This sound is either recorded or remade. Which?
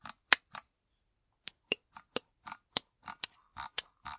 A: recorded